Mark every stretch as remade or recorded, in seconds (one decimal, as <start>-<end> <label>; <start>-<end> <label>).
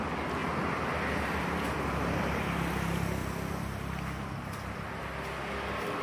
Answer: 0.0-3.2 recorded; 3.2-5.6 remade; 5.6-6.0 recorded